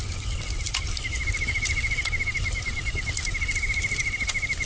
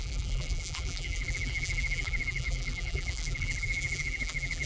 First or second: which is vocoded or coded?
second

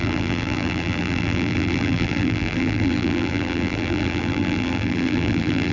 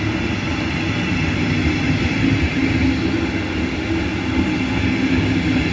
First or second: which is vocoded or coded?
first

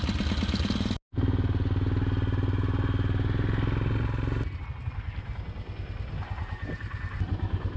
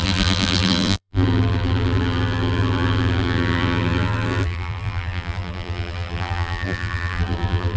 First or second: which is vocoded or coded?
second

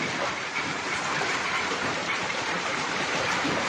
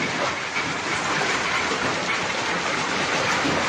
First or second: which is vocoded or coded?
first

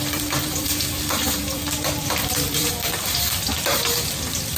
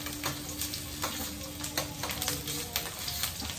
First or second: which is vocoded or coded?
first